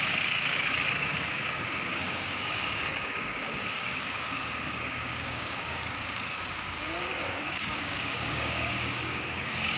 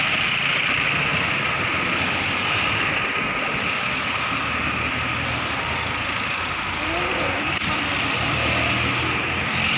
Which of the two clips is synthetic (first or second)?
first